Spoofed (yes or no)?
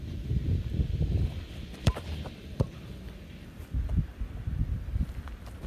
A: yes